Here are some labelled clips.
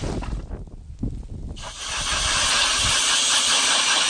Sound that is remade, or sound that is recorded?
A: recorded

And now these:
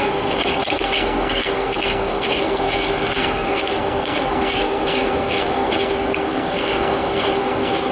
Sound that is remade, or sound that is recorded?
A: remade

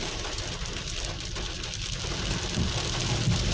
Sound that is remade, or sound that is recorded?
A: recorded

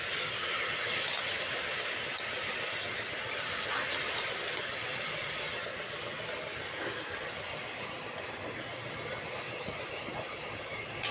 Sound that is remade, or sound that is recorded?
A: recorded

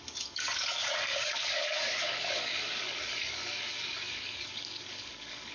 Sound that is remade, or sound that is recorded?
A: remade